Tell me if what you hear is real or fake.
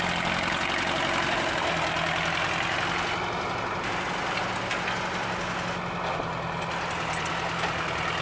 real